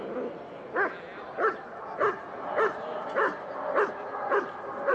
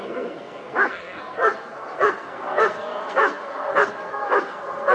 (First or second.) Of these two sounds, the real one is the first